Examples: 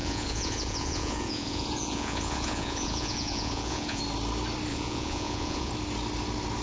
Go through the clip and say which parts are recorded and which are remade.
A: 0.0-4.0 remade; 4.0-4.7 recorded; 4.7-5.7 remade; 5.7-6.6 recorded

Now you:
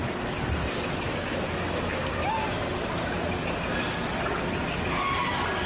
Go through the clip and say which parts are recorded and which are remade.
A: 0.0-5.7 recorded

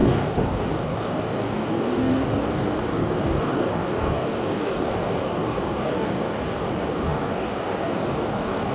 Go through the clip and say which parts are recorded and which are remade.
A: 0.0-8.7 remade

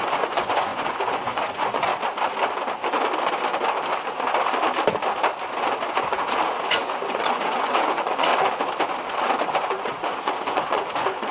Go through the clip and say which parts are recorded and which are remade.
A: 0.0-1.9 remade; 1.9-5.9 recorded; 5.9-8.3 remade; 8.3-9.5 recorded; 9.5-11.3 remade